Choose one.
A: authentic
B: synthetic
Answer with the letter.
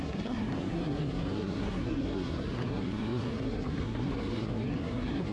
B